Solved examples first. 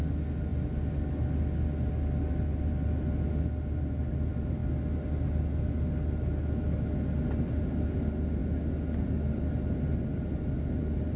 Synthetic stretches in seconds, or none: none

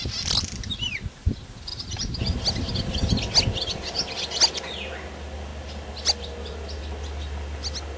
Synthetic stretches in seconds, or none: none

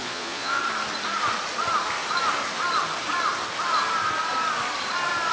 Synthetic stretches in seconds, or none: 0.0-0.6 (vocoder, Vocos)

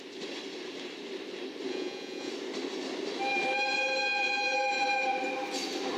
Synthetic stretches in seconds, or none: 1.7-2.3 (vocoder, Vocos)

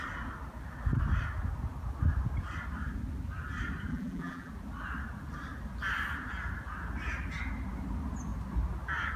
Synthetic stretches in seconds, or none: 3.9-4.5 (vocoder, BigVGAN v2)